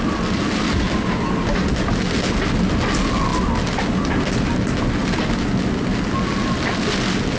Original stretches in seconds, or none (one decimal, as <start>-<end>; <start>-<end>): 0.0-7.4